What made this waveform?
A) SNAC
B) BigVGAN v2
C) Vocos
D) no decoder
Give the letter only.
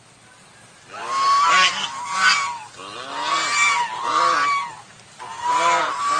D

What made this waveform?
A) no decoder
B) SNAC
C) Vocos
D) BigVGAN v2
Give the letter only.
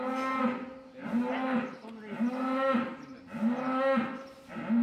A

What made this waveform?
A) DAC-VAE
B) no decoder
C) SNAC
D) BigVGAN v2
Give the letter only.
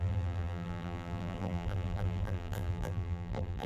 D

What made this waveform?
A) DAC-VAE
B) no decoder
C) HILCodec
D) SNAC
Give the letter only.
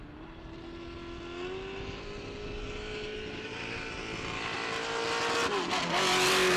B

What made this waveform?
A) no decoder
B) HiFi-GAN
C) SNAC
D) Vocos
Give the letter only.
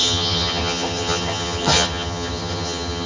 B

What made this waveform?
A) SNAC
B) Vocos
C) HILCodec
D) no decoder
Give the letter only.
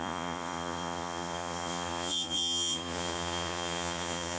B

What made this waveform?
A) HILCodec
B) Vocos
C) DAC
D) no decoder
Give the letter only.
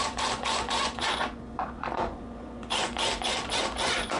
B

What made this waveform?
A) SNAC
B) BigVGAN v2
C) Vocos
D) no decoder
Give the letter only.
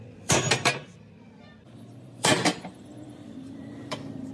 B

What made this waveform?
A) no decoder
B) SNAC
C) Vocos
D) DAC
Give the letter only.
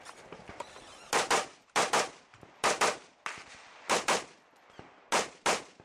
A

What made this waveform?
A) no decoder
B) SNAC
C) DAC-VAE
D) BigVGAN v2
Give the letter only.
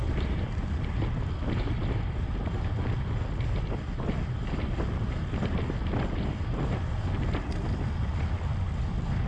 A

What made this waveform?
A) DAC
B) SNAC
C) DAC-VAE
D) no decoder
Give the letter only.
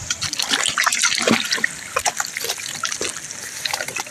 D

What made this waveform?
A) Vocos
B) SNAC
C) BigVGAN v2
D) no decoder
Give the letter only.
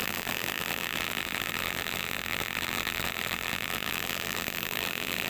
C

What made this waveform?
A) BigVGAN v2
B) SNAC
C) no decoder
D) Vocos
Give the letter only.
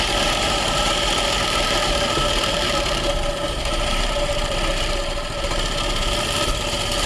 A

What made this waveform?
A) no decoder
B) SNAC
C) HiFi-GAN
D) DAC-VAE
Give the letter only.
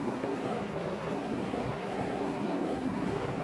B